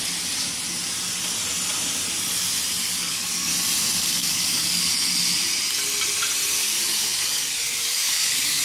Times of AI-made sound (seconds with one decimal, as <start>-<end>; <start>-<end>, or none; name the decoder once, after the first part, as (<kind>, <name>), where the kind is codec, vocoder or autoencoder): 2.9-3.5 (codec, DAC); 4.2-4.8; 6.6-8.6